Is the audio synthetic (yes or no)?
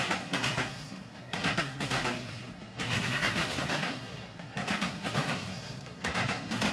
yes